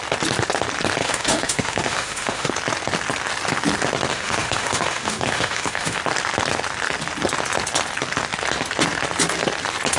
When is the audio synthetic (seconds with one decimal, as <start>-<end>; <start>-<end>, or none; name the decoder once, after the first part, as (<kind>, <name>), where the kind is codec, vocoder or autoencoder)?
1.0-2.5 (autoencoder, DAC-VAE); 4.1-6.0